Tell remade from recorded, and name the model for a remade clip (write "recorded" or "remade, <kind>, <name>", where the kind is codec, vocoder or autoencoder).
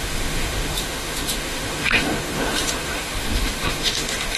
remade, autoencoder, DAC-VAE